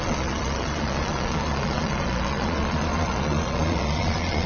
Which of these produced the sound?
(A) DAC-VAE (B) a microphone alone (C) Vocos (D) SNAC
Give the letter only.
C